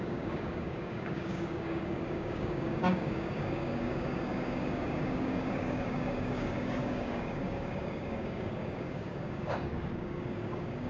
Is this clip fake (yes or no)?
yes